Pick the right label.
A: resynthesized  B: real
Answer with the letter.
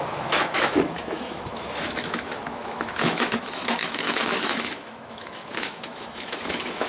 A